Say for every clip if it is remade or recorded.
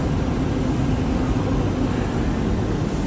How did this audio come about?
recorded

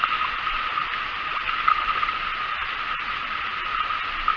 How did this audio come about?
recorded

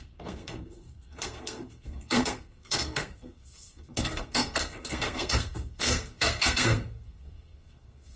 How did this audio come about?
remade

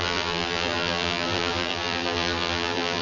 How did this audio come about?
remade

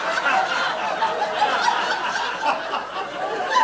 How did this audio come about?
remade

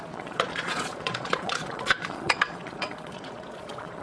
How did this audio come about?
remade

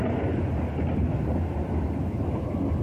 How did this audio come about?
recorded